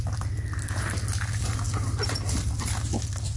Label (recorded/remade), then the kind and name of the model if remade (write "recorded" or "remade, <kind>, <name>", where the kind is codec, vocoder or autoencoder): recorded